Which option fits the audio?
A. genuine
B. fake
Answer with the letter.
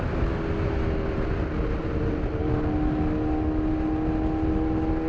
A